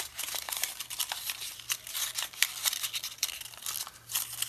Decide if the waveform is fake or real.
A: real